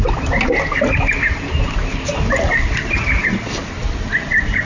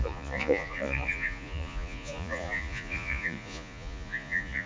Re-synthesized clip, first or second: second